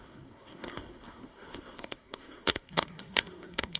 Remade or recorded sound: remade